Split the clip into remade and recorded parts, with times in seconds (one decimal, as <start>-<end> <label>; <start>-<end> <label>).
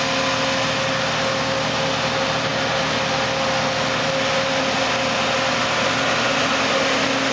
0.0-7.3 recorded